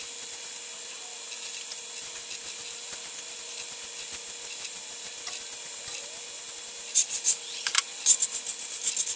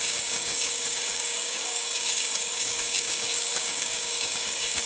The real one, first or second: first